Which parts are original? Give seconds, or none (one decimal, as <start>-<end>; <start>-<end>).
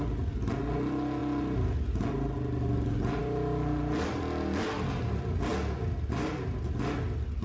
0.0-7.4